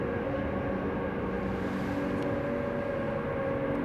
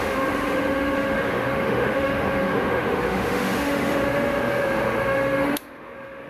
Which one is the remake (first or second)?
second